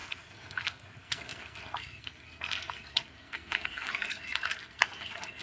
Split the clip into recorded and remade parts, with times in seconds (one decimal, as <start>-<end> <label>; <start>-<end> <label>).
0.0-5.4 remade